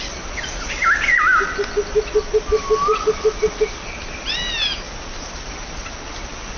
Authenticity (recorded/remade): recorded